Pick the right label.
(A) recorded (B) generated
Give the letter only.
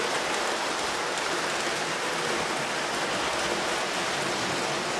A